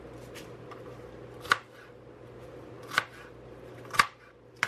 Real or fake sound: real